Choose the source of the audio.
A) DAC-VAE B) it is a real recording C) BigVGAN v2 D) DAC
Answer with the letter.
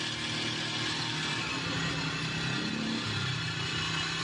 B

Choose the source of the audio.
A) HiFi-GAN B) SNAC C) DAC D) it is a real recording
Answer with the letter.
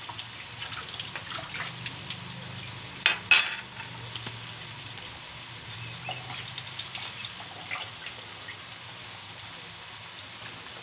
D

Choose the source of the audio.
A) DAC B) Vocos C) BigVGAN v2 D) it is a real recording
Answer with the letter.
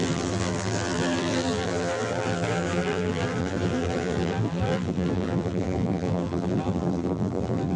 C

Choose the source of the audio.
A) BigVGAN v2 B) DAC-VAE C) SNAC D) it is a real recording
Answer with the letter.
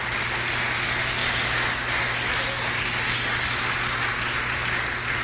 D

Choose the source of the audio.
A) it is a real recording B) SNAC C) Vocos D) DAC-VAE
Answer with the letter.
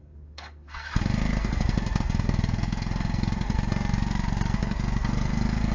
B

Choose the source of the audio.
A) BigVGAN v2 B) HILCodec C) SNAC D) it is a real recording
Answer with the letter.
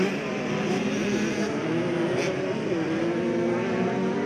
D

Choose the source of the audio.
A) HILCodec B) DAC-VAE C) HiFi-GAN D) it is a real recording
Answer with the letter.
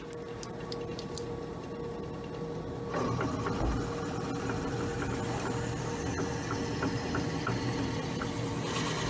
D